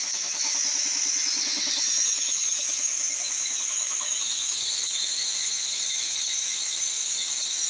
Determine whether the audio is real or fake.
fake